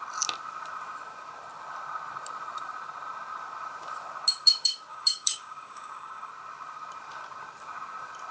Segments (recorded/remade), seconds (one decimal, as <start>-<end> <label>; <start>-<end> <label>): 0.0-4.9 recorded; 4.9-6.3 remade; 6.3-8.3 recorded